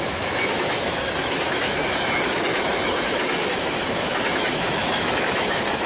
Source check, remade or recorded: remade